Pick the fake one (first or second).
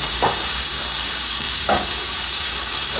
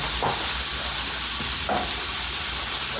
first